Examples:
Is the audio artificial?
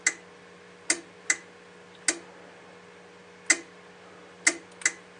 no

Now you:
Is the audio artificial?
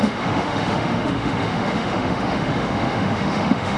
yes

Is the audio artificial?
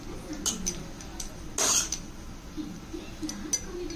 no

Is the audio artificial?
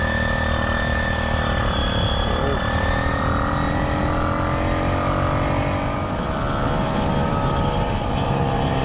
no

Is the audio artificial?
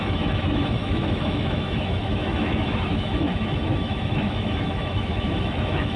yes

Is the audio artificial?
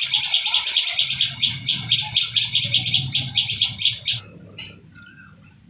no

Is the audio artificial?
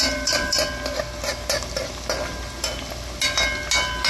no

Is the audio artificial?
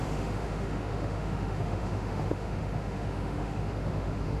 yes